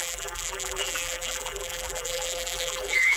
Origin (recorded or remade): remade